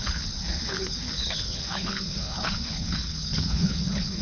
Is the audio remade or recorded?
remade